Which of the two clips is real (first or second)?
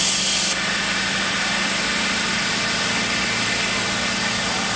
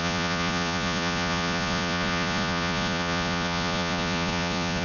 first